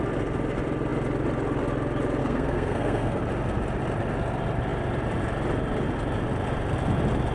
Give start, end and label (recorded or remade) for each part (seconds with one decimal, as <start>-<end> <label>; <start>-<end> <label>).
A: 0.0-2.2 recorded; 2.2-3.2 remade; 3.2-7.3 recorded